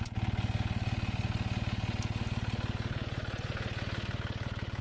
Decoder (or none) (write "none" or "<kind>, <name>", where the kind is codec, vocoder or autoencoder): none